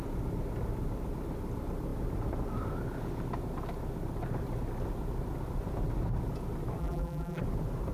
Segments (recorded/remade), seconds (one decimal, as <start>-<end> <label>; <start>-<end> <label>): 0.0-6.8 recorded; 6.8-7.4 remade; 7.4-7.9 recorded